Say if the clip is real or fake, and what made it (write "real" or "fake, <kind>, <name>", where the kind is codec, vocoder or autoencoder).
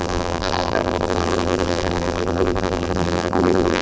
fake, vocoder, BigVGAN v2